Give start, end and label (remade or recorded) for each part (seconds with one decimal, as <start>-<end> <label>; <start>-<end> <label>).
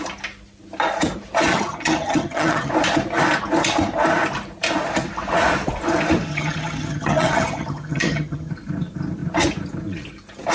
0.0-1.5 recorded; 1.5-2.7 remade; 2.7-6.3 recorded; 6.3-8.5 remade; 8.5-10.5 recorded